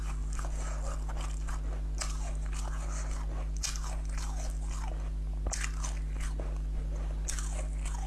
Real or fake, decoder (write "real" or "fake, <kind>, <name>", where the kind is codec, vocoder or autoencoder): real